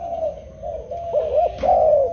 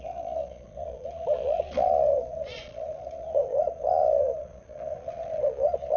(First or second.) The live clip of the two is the first